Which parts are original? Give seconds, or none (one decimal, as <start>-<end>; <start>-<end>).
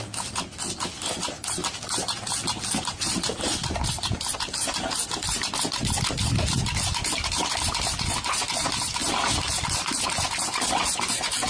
0.0-2.9; 4.2-11.5